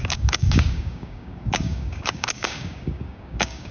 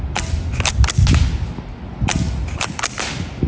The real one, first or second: second